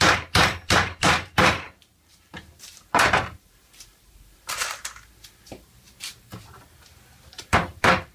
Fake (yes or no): yes